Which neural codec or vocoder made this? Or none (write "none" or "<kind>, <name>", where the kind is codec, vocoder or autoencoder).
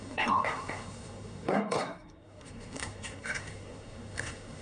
codec, SNAC